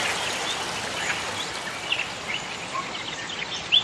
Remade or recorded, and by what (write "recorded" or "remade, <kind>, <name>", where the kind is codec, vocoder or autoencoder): recorded